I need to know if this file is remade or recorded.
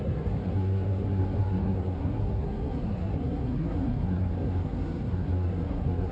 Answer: remade